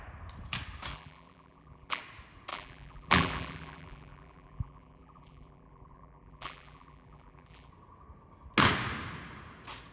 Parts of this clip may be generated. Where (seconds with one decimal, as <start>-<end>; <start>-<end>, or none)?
0.9-2.0; 2.5-7.7

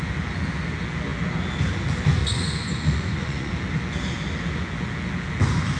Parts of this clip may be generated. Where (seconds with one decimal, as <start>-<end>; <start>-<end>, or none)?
2.2-3.5

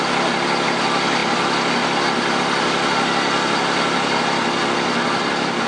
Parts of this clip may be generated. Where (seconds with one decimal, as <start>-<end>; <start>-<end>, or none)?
none

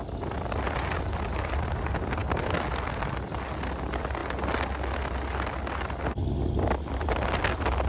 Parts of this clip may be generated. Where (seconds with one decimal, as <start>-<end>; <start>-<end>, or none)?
none

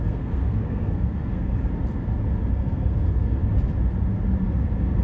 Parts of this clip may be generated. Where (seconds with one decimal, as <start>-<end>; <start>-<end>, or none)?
0.0-1.5; 2.5-3.4

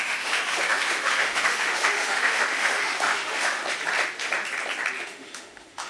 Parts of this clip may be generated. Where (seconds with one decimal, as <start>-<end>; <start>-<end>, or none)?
0.0-3.6; 5.0-5.9